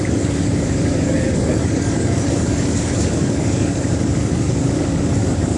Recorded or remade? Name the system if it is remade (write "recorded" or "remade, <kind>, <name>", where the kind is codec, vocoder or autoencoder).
remade, codec, DAC